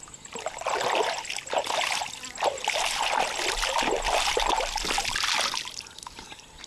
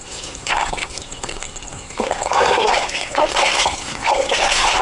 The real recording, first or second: first